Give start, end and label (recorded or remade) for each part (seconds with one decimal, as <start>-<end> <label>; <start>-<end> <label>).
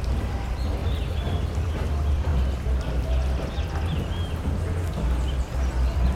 0.0-0.8 recorded; 0.8-1.7 remade; 1.7-6.2 recorded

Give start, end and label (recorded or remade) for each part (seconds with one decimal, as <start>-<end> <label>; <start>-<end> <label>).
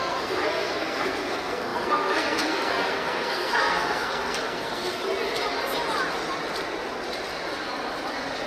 0.0-5.0 remade; 5.0-8.5 recorded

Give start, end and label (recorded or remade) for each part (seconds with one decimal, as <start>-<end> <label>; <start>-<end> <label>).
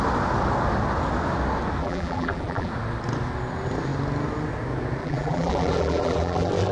0.0-1.8 recorded; 1.8-2.7 remade; 2.7-5.0 recorded; 5.0-6.7 remade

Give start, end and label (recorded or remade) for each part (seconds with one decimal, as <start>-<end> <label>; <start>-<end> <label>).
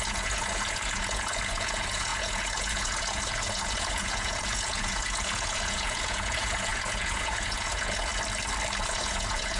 0.0-8.1 remade; 8.1-8.8 recorded; 8.8-9.6 remade